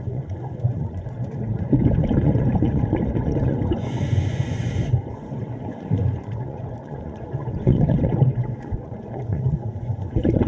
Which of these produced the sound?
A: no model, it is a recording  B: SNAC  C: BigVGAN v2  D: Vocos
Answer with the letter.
D